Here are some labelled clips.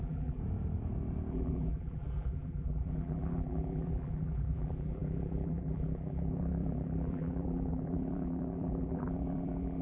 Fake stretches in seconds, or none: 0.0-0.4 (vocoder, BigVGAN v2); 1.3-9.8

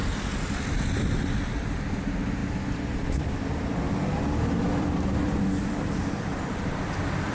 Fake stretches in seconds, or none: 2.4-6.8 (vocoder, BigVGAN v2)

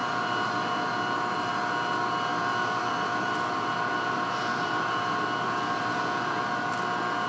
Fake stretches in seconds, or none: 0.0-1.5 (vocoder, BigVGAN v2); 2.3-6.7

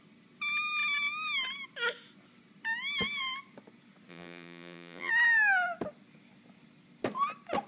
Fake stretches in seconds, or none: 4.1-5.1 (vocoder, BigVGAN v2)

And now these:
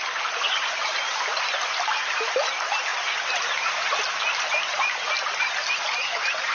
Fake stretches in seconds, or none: none

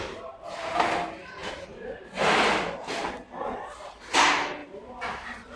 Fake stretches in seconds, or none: 4.6-5.6 (vocoder, BigVGAN v2)

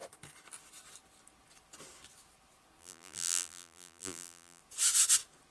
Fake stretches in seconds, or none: 2.8-4.6 (vocoder, BigVGAN v2)